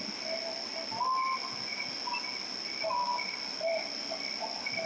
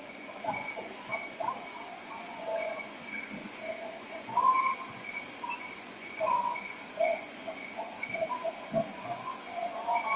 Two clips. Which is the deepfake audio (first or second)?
second